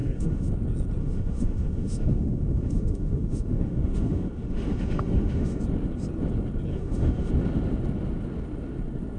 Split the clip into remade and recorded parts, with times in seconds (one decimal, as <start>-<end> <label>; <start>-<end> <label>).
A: 0.0-0.5 remade; 0.5-1.0 recorded; 1.0-5.6 remade; 5.6-6.7 recorded; 6.7-7.3 remade; 7.3-9.2 recorded

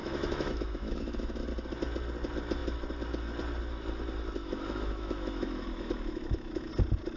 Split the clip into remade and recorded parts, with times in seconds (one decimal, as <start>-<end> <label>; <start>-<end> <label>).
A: 0.0-1.4 remade; 1.4-4.4 recorded; 4.4-6.7 remade; 6.7-7.2 recorded

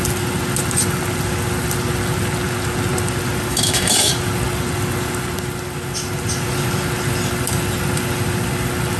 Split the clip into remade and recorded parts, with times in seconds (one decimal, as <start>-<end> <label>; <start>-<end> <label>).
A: 0.0-3.5 recorded; 3.5-4.1 remade; 4.1-9.0 recorded

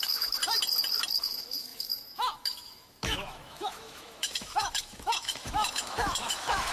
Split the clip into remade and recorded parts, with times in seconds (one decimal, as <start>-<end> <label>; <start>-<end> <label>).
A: 0.0-0.4 remade; 0.4-1.2 recorded; 1.2-6.7 remade

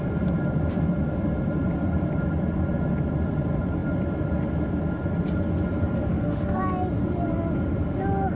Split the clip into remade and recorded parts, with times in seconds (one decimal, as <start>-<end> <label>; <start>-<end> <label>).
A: 0.0-6.1 recorded; 6.1-6.6 remade; 6.6-8.3 recorded

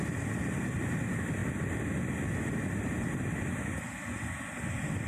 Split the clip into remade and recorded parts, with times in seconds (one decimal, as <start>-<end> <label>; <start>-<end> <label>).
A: 0.0-5.1 recorded

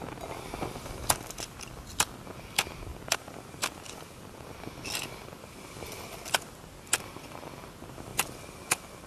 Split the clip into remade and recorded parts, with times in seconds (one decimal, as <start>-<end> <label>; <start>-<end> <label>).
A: 0.0-9.1 recorded

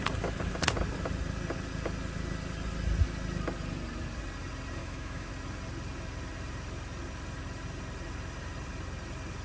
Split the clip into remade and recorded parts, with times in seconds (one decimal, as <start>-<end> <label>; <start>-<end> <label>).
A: 0.0-4.8 recorded; 4.8-5.3 remade; 5.3-9.4 recorded